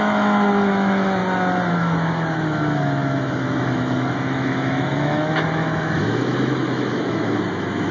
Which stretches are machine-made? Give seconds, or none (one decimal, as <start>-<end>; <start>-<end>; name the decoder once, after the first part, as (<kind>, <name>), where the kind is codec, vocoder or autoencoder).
0.0-1.2 (autoencoder, DAC-VAE); 1.7-7.9